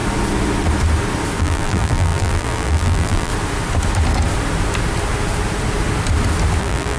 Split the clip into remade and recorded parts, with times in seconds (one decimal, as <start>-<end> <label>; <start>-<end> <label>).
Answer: 0.0-1.4 recorded; 1.4-3.3 remade; 3.3-6.6 recorded; 6.6-7.0 remade